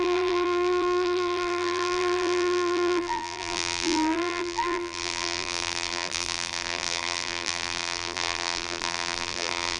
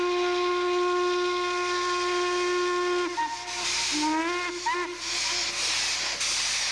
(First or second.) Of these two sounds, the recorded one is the second